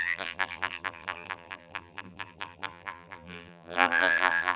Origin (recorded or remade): remade